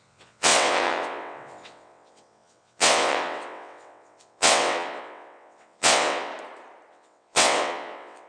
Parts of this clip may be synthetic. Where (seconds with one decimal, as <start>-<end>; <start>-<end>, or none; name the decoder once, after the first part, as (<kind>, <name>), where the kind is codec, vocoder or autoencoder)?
0.0-6.3 (vocoder, WaveNeXt); 6.9-8.3

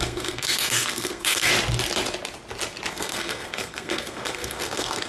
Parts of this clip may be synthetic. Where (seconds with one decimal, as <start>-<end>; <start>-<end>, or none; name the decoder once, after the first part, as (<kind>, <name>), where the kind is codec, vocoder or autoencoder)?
0.0-1.5 (codec, SNAC); 2.9-5.1

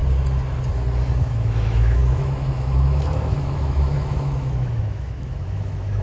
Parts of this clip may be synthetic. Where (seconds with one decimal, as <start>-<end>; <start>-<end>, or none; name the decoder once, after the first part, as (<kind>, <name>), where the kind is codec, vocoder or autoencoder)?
1.2-6.0 (autoencoder, DAC-VAE)

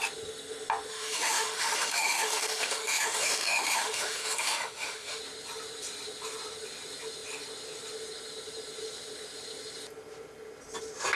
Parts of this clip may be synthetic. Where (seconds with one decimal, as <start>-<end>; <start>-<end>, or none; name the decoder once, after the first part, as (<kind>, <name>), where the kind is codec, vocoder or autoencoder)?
0.9-5.2 (autoencoder, DAC-VAE)

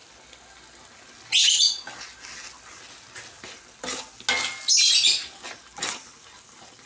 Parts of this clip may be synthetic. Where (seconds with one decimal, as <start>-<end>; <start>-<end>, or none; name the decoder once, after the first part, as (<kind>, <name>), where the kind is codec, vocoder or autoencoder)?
none

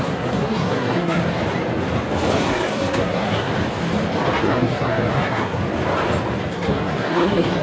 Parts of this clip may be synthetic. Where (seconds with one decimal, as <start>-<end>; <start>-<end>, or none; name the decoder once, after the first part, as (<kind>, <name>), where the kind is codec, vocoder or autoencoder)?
0.0-1.2 (codec, SNAC); 2.4-3.5; 4.4-5.6; 6.5-7.6

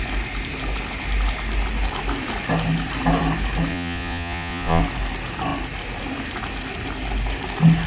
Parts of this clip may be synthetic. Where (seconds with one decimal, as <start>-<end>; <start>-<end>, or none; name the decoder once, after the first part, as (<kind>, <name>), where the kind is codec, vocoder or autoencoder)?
3.7-4.8 (vocoder, Vocos)